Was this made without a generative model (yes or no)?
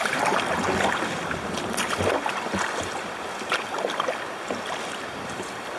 no